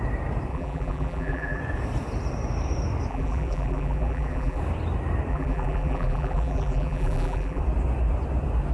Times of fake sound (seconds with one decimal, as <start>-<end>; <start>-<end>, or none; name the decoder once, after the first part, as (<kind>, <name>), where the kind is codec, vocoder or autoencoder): 0.5-1.6 (vocoder, BigVGAN v2); 3.1-4.6; 5.3-7.6